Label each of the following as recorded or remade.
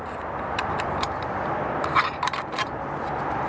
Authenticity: remade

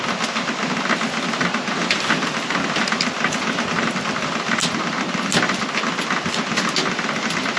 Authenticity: recorded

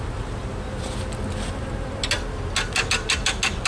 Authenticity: recorded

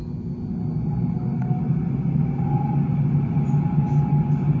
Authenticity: recorded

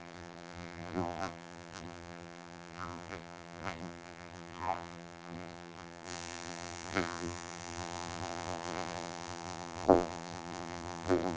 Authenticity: remade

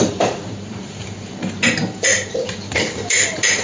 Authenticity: remade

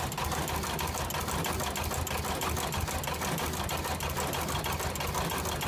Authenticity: recorded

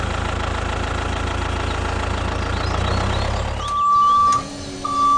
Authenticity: recorded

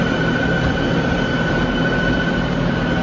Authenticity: remade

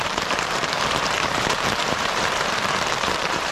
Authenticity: remade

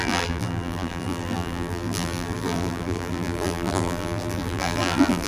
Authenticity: remade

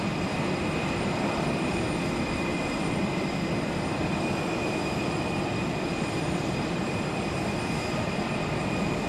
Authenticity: remade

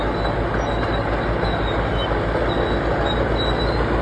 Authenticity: recorded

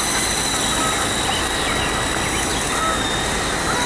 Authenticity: recorded